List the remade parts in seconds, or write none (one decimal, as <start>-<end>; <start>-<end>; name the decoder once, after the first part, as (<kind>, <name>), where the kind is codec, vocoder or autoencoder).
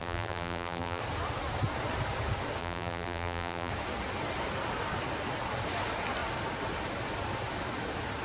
0.0-1.0 (vocoder, BigVGAN v2); 2.6-3.7